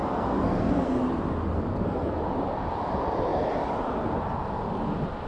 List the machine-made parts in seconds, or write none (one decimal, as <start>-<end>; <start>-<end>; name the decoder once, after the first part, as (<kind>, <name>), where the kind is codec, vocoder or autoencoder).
0.0-1.0 (codec, SNAC); 1.7-2.2

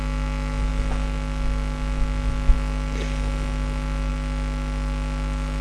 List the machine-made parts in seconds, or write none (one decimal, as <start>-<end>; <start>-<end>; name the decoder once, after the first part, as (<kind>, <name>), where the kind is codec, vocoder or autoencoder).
none

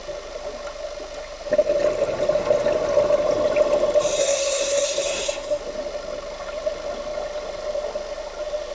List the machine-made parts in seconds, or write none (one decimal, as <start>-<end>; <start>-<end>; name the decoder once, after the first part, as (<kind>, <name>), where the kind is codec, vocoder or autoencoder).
4.2-5.6 (codec, SNAC)

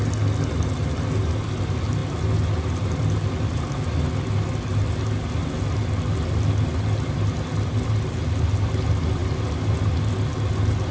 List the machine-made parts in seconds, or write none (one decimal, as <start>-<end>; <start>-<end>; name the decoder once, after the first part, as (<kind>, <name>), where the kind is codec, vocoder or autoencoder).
none

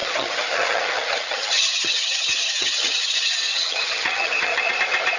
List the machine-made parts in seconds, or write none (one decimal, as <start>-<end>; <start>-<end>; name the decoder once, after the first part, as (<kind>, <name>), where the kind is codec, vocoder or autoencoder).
0.0-3.1 (vocoder, HiFi-GAN); 3.5-4.7

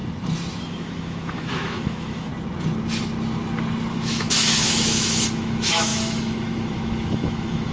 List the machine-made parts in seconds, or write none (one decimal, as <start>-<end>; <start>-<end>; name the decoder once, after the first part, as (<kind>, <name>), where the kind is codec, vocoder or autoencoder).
0.6-2.3 (autoencoder, DAC-VAE); 3.9-7.7